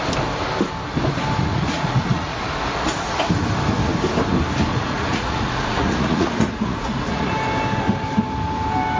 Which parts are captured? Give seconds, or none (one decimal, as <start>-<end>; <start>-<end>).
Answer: 0.0-1.5; 2.4-4.7; 7.3-9.0